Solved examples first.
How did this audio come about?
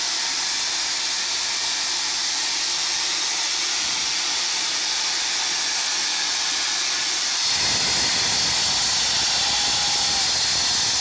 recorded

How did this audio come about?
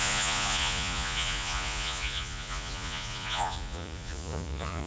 remade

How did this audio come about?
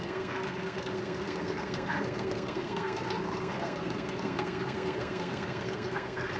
remade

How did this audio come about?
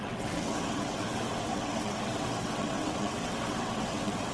remade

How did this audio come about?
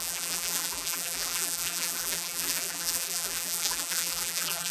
remade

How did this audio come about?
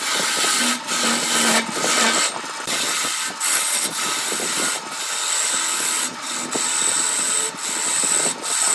recorded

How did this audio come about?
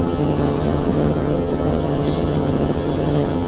remade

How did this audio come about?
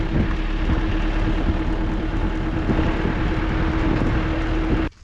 recorded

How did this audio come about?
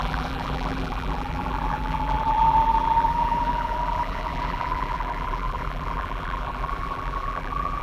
remade